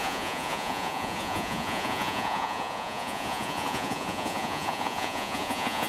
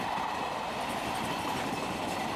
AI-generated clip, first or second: first